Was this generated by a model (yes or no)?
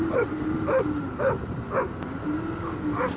no